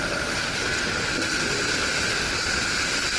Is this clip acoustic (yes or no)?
yes